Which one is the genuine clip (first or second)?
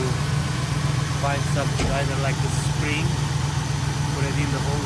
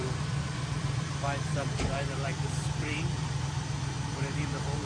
first